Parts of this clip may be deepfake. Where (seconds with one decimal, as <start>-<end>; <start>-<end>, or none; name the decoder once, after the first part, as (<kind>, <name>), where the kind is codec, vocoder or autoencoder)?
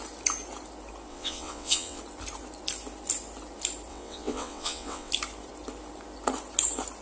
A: 1.1-2.0 (vocoder, WaveNeXt); 3.9-5.1